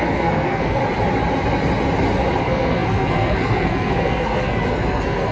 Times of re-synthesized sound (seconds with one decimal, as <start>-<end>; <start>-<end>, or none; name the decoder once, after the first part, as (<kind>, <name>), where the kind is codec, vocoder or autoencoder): 0.0-0.8 (codec, SNAC); 2.4-5.3